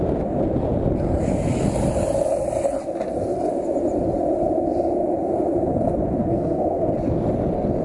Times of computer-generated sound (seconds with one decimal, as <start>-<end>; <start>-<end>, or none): 6.2-6.9